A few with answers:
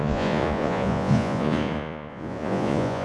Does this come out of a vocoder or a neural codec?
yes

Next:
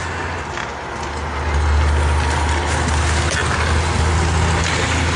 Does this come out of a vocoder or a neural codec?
no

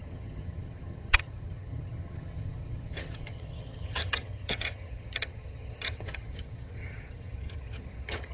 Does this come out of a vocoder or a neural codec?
yes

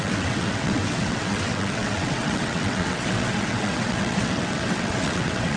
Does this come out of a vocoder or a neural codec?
yes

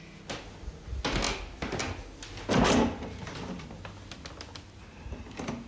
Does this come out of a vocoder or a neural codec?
no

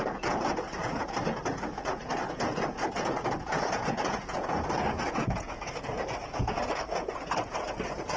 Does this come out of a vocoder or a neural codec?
yes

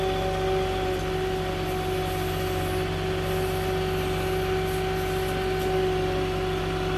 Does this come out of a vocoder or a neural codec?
no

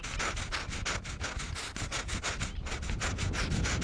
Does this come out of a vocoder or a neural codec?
no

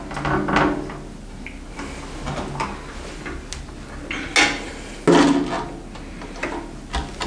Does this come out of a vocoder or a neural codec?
no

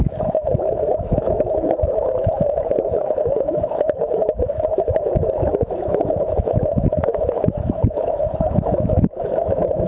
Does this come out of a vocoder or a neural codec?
yes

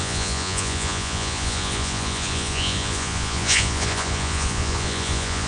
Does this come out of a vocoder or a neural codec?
yes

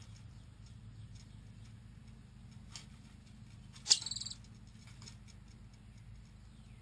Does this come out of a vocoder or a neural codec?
no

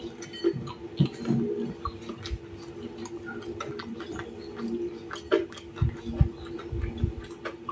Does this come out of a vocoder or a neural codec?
no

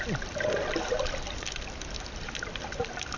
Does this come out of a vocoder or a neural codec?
no